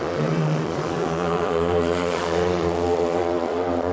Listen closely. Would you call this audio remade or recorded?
remade